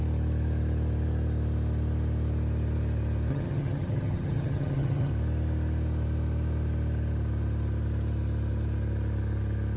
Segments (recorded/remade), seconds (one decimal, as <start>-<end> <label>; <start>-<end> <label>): 0.0-3.3 recorded; 3.3-5.1 remade; 5.1-9.8 recorded